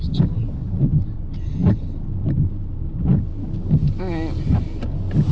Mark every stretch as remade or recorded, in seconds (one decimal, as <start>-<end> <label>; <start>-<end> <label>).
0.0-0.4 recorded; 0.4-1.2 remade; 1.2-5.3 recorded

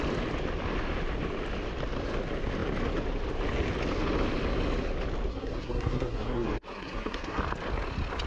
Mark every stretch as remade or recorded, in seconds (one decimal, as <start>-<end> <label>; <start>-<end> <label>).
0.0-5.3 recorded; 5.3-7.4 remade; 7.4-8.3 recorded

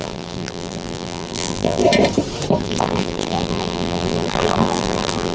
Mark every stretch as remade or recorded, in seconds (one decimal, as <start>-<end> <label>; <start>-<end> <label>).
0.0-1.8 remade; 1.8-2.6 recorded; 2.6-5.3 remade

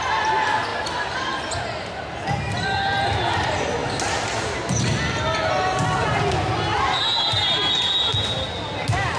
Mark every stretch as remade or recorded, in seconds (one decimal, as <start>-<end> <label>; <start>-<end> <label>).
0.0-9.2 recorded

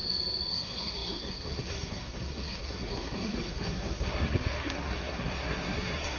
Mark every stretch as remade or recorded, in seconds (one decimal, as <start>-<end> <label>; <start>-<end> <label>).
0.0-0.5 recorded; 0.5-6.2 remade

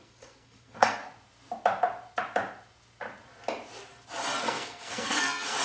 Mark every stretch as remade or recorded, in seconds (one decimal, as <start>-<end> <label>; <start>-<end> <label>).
0.0-1.0 remade; 1.0-4.4 recorded; 4.4-5.6 remade

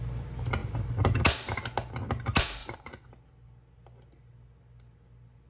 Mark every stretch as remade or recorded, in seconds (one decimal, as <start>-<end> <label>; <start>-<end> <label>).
0.0-2.6 recorded; 2.6-3.1 remade; 3.1-5.5 recorded